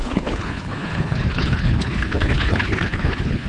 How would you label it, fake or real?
fake